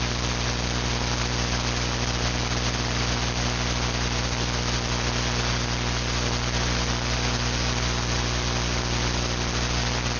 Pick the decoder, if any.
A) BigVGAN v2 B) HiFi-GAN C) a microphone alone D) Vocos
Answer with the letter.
C